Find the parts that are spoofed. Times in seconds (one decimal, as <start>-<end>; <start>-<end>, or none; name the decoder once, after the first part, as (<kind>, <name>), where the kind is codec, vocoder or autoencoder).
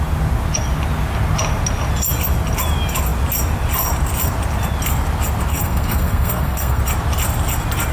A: 5.5-6.8 (codec, SNAC)